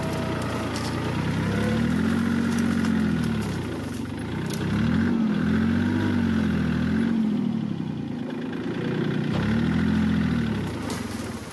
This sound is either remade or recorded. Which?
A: recorded